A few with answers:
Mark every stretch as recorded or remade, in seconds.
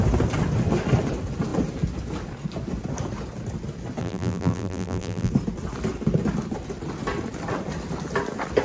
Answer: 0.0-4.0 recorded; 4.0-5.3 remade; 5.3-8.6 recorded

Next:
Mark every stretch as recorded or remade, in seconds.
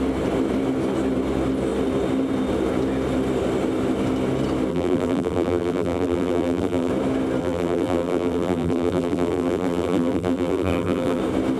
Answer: 0.0-4.7 recorded; 4.7-6.9 remade; 6.9-7.4 recorded; 7.4-11.2 remade; 11.2-11.6 recorded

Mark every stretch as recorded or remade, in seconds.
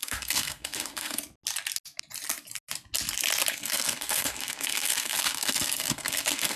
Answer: 0.0-1.2 remade; 1.2-3.5 recorded; 3.5-6.6 remade